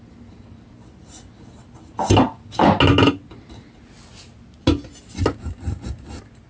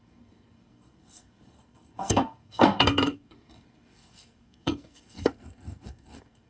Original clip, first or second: first